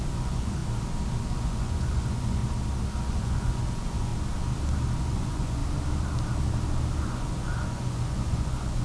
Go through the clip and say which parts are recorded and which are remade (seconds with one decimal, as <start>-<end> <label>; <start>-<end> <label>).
0.0-0.6 remade; 0.6-1.3 recorded; 1.3-2.4 remade; 2.4-3.1 recorded; 3.1-4.1 remade; 4.1-5.0 recorded; 5.0-5.6 remade; 5.6-7.0 recorded; 7.0-8.8 remade